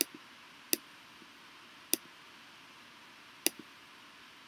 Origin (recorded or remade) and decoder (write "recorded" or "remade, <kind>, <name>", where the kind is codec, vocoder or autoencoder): recorded